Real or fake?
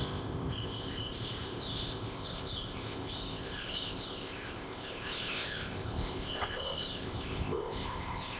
fake